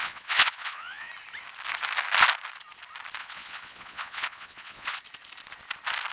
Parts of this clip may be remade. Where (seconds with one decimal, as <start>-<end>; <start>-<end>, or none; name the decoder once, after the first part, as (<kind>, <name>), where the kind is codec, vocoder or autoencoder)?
0.0-1.1 (vocoder, Vocos); 3.2-5.0